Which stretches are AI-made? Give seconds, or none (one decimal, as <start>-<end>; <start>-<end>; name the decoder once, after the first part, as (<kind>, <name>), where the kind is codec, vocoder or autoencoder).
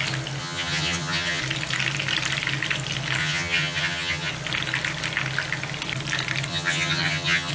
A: 0.4-1.4 (vocoder, HiFi-GAN); 3.2-4.3; 6.5-7.5